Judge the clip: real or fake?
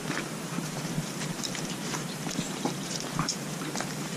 fake